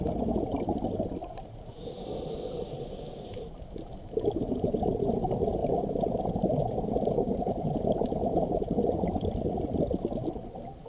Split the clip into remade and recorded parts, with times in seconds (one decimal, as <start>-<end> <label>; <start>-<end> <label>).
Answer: 0.0-4.0 recorded; 4.0-4.8 remade; 4.8-10.9 recorded